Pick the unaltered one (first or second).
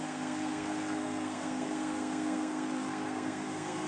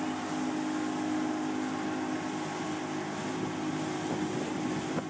second